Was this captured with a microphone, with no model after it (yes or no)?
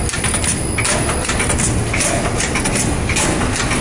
yes